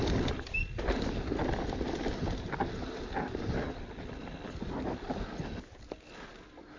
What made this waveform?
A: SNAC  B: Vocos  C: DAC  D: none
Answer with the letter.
D